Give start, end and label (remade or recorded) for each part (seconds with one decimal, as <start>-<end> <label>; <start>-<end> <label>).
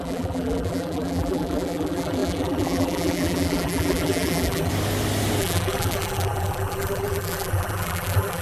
0.0-4.7 remade; 4.7-5.4 recorded; 5.4-8.4 remade